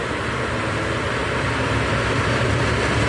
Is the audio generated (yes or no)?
no